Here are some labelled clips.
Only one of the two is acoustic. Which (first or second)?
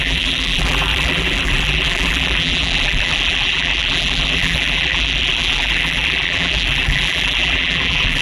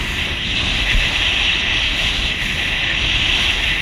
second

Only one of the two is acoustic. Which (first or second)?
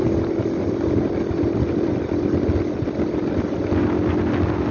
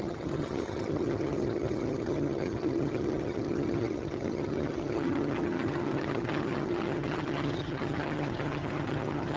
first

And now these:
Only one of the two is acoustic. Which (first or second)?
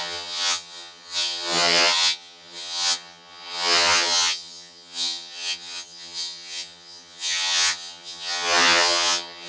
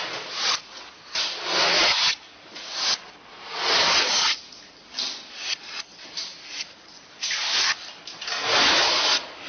second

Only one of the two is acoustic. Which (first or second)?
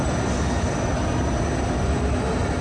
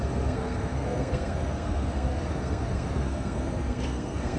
first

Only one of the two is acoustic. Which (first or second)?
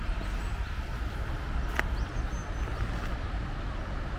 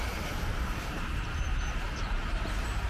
first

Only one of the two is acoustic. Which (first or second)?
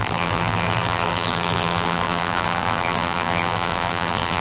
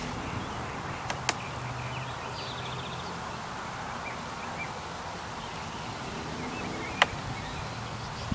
second